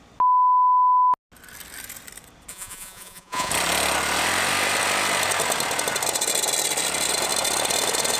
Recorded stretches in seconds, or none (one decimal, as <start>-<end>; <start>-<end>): 0.0-2.5; 3.5-8.2